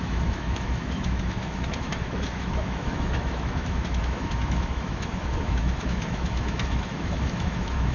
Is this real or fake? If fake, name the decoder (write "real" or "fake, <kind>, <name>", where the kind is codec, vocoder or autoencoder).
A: fake, autoencoder, DAC-VAE